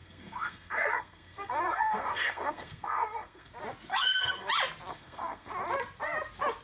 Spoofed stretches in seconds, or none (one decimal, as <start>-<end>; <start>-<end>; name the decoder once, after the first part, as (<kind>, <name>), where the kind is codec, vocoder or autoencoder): 0.0-3.5 (codec, SNAC); 3.9-4.5; 4.9-5.5